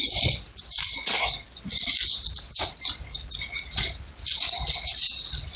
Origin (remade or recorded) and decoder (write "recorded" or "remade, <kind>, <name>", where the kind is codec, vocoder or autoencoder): recorded